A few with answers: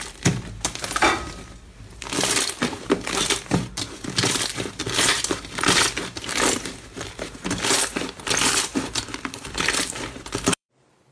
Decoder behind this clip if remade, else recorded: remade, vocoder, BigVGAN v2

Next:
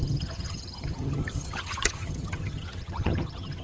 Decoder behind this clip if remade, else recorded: remade, vocoder, HiFi-GAN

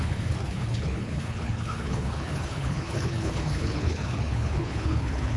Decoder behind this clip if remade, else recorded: remade, codec, HILCodec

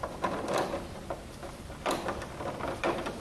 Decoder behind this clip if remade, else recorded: recorded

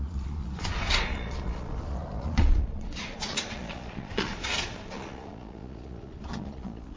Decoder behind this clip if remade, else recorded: remade, vocoder, Vocos